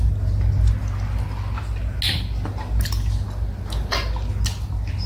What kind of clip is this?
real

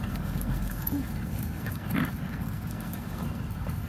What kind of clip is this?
fake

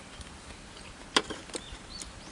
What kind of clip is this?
real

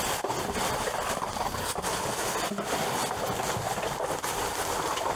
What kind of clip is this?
real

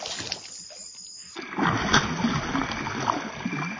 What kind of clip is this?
real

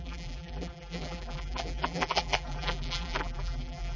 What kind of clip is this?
fake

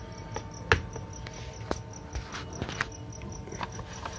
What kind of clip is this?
real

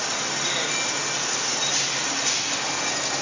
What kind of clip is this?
real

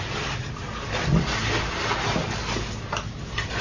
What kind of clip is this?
real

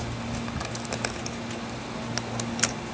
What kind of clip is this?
real